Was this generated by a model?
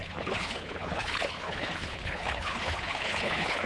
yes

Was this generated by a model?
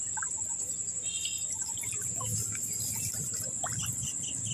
no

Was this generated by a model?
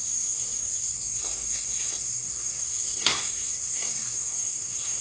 yes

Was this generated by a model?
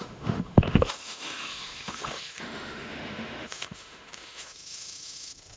yes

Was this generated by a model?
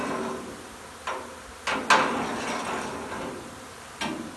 no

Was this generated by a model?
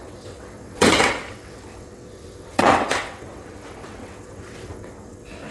yes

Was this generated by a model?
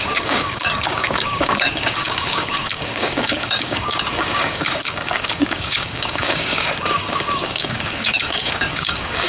yes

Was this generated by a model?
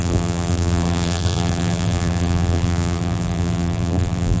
yes